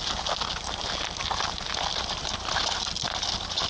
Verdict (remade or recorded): recorded